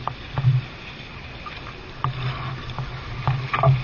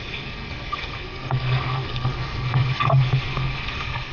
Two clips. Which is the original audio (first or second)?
first